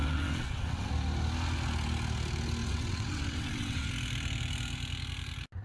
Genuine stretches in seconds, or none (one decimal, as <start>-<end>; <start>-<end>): 0.9-2.6; 3.9-5.6